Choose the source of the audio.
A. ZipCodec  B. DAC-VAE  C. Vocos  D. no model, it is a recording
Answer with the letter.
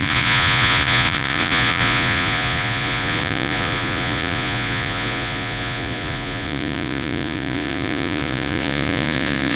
C